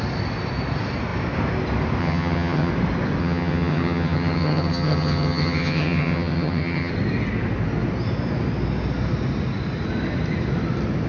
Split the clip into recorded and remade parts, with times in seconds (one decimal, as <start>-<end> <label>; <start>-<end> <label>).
0.0-2.0 recorded; 2.0-2.7 remade; 2.7-3.2 recorded; 3.2-6.9 remade; 6.9-11.1 recorded